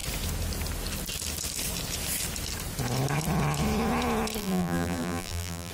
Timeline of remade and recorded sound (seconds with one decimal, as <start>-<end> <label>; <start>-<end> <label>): 0.0-4.4 recorded; 4.4-5.7 remade